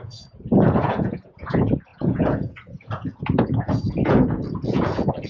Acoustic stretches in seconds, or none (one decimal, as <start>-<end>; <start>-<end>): none